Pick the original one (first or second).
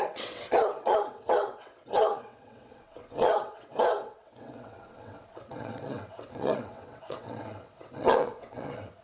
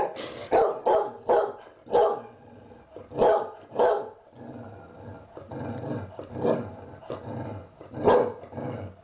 second